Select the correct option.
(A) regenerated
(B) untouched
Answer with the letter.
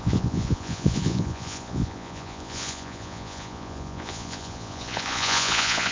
A